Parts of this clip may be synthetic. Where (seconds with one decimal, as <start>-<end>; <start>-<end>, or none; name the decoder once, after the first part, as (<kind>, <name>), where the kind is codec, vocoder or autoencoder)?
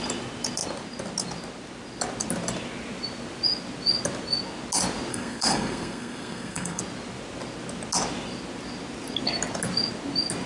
5.1-6.8 (codec, SNAC)